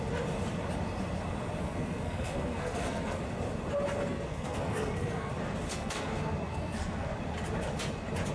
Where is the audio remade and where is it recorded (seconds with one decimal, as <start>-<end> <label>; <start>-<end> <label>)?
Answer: 0.0-1.6 recorded; 1.6-3.2 remade; 3.2-4.1 recorded; 4.1-5.3 remade; 5.3-5.7 recorded; 5.7-7.2 remade; 7.2-8.3 recorded